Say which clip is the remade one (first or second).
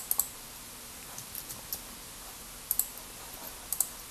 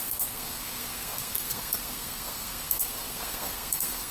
second